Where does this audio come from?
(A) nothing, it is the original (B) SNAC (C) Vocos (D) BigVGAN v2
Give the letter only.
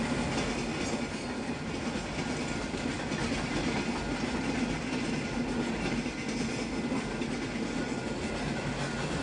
A